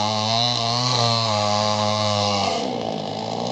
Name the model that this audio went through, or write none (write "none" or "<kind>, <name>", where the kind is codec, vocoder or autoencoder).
codec, SNAC